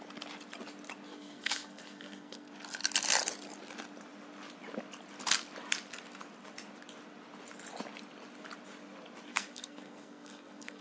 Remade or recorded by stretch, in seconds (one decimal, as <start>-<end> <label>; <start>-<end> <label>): 0.0-1.1 recorded; 1.1-2.5 remade; 2.5-9.3 recorded; 9.3-10.8 remade